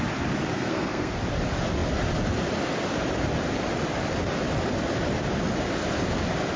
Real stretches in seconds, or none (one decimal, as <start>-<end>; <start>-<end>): 0.0-0.5; 1.2-6.6